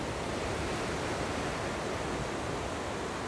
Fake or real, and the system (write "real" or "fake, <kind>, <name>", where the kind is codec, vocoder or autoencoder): real